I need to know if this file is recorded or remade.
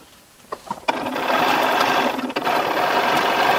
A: remade